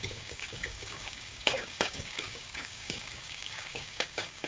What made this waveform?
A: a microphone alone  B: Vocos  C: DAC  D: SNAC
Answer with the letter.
C